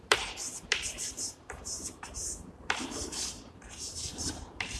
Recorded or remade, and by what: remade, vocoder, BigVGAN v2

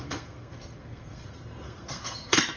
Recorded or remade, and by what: remade, codec, SNAC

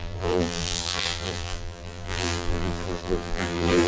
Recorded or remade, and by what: remade, vocoder, BigVGAN v2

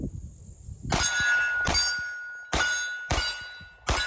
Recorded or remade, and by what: recorded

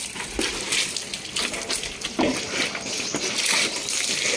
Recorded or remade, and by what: recorded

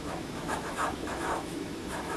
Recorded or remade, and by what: remade, autoencoder, DAC-VAE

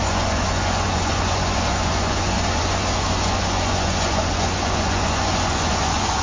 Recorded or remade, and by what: remade, vocoder, Vocos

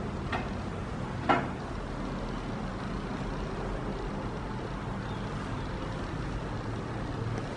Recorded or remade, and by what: recorded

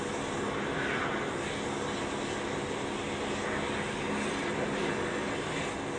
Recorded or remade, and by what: recorded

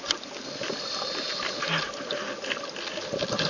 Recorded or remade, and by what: recorded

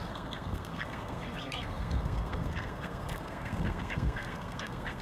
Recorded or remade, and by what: remade, codec, SNAC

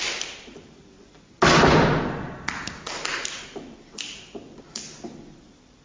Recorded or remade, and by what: recorded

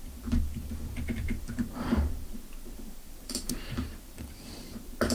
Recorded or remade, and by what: remade, vocoder, BigVGAN v2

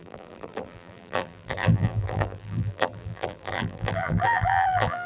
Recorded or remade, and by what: remade, vocoder, BigVGAN v2